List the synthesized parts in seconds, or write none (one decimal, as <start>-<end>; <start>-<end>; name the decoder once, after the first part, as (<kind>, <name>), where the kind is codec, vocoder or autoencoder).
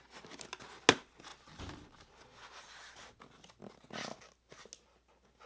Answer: none